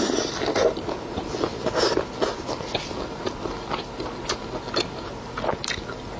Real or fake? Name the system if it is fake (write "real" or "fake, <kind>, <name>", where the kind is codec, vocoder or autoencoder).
real